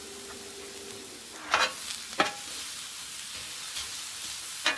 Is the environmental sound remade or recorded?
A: recorded